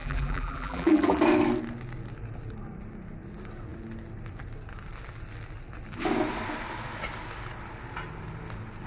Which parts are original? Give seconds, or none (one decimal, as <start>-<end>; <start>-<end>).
1.2-8.9